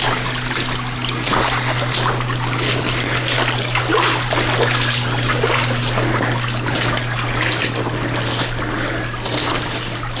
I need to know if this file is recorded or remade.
recorded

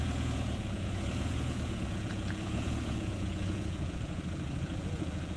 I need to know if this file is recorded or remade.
remade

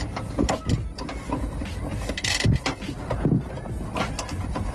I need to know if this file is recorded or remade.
recorded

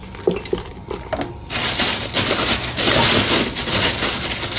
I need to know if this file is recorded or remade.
recorded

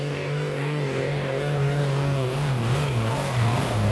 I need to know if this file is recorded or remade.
remade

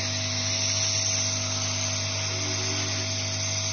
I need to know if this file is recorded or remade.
recorded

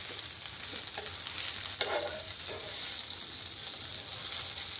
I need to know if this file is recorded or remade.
recorded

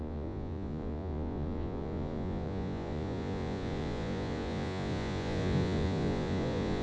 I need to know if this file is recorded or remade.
remade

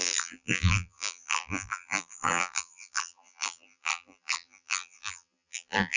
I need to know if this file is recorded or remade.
remade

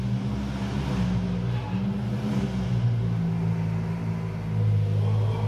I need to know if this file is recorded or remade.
recorded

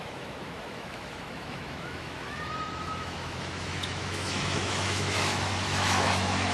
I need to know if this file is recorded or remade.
remade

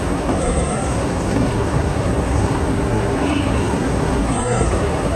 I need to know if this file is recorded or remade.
remade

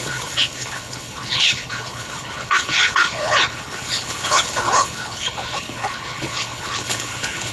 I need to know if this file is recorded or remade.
remade